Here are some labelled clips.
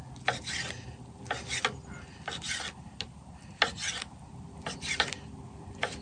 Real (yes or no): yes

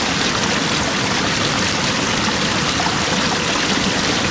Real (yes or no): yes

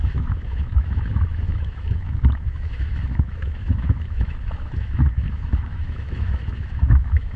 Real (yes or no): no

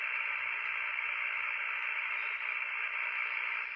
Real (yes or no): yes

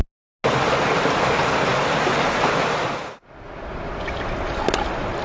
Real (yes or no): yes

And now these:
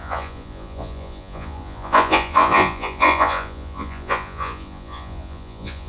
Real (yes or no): no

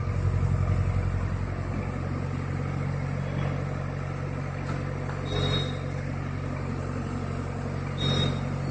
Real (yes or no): yes